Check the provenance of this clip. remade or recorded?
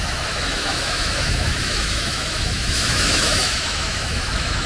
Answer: remade